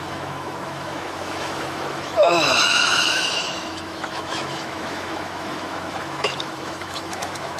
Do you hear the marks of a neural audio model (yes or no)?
yes